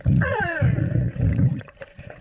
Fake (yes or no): yes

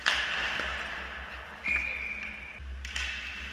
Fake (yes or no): no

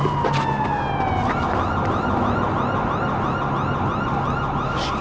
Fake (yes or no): no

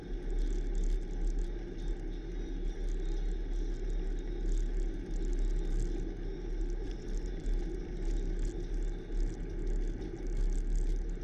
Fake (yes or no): no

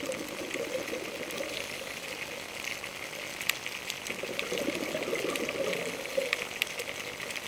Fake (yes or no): no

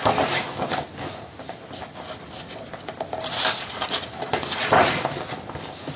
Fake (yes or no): no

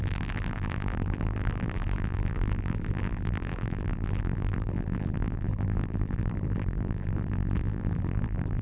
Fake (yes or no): yes